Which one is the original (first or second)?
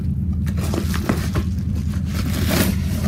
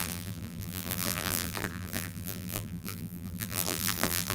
first